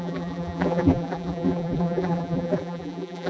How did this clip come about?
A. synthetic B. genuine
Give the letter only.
A